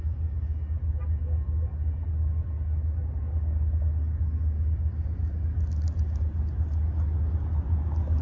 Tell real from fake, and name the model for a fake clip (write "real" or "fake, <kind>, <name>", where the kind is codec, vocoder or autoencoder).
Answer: real